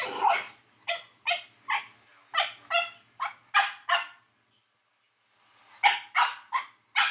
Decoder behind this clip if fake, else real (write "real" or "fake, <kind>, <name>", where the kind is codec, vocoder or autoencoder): real